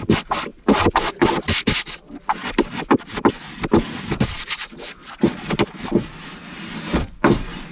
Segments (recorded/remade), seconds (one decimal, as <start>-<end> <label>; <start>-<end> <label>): 0.0-7.7 recorded